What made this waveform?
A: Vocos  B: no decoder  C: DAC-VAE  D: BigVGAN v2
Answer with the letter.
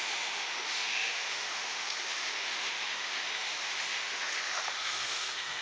C